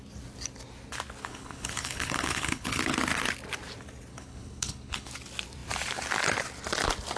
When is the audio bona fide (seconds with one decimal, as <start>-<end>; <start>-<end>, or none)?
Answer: 0.0-1.2; 2.9-4.1; 5.1-7.2